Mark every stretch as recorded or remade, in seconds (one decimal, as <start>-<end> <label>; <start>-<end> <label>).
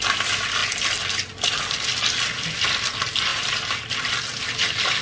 0.0-3.3 recorded; 3.3-3.9 remade; 3.9-5.0 recorded